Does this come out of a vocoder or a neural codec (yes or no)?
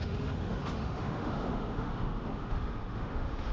yes